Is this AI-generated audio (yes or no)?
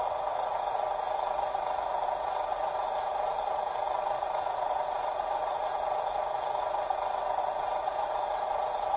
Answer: yes